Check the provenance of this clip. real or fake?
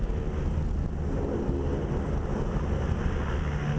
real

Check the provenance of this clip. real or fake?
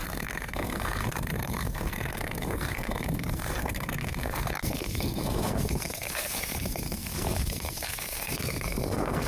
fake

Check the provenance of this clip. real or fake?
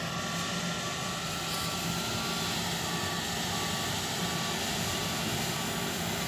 real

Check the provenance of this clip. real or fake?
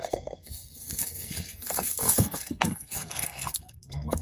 fake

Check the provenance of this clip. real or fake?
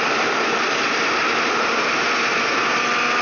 real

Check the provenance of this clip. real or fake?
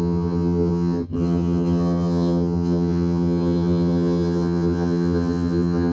fake